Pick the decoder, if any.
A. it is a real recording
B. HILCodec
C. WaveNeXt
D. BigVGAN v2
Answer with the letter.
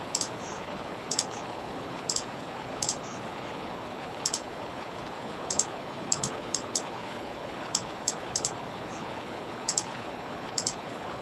B